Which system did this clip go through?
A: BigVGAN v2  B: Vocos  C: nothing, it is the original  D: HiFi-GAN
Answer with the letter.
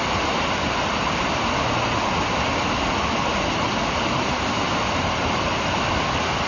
C